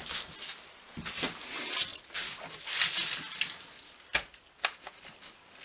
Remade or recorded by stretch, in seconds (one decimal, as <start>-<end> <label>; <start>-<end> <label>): 0.0-5.6 recorded